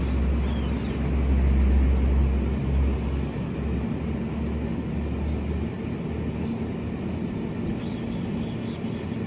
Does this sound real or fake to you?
real